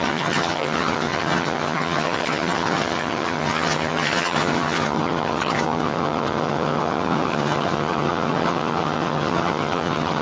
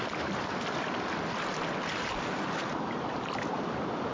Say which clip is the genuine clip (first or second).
second